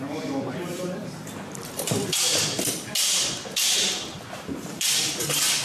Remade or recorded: remade